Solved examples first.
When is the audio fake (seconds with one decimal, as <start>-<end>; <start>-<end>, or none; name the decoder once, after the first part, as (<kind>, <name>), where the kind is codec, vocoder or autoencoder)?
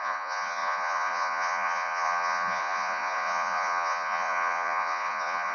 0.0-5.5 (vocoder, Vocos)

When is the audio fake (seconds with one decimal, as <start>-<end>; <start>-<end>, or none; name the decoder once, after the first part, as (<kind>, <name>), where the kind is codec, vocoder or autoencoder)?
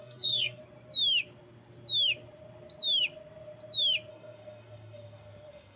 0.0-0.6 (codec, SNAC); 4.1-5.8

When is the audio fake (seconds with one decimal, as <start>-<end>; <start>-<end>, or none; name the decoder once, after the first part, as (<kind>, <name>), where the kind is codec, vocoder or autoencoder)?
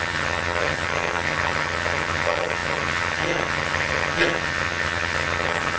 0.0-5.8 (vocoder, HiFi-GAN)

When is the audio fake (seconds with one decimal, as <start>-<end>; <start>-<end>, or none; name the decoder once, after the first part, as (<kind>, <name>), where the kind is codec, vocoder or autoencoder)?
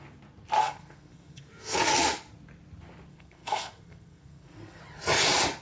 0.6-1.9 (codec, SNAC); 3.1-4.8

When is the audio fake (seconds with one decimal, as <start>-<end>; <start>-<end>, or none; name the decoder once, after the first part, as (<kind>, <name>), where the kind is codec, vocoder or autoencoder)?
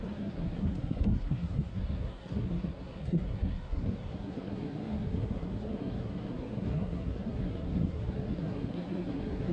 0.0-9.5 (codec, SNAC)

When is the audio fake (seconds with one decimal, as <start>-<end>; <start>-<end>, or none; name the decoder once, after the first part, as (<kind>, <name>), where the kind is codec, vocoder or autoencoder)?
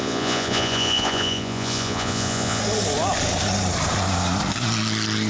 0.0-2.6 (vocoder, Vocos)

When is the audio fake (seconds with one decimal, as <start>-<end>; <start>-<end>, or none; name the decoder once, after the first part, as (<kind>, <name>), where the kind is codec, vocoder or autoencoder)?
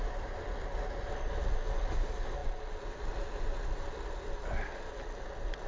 none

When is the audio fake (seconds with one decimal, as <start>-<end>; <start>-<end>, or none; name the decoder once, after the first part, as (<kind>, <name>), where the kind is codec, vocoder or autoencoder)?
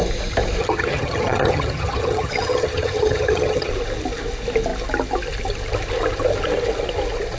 0.6-3.7 (vocoder, HiFi-GAN)